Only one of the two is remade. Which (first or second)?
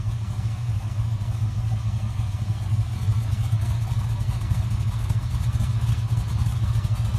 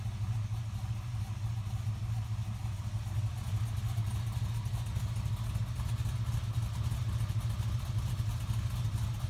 first